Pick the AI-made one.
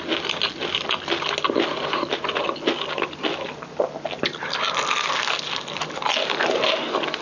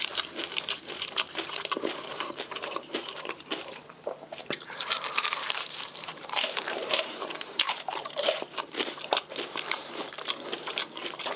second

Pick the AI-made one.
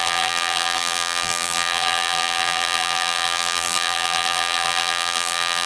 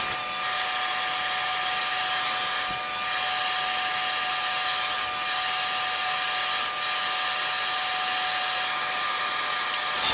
first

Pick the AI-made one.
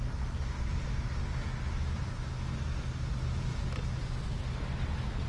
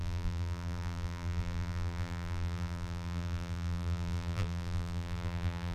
second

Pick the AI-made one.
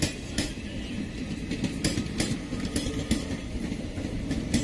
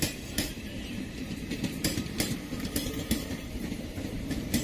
second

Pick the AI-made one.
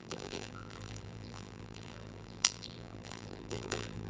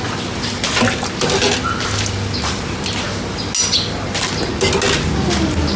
first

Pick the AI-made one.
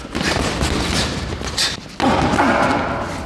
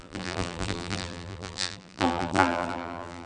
second